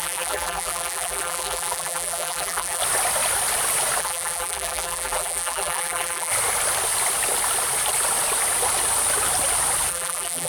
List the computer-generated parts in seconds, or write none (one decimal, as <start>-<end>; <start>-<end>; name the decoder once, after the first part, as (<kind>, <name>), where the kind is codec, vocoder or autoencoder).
0.0-2.8 (vocoder, BigVGAN v2); 4.0-6.3; 9.9-10.5